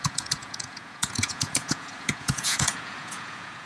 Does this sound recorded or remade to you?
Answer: remade